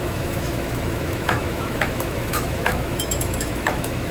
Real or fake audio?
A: fake